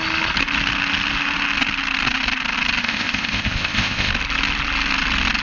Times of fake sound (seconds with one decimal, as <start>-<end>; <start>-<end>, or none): 2.8-4.1